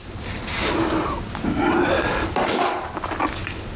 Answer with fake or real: real